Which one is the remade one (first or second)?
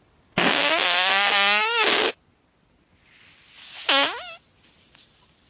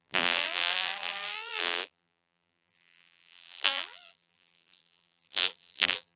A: second